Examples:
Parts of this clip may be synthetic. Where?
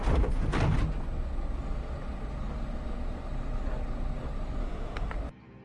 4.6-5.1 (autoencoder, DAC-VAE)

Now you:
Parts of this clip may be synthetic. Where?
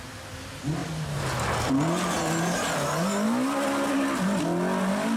none